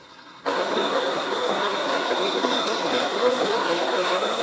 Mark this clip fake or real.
fake